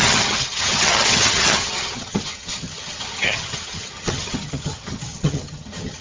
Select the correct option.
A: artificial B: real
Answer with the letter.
A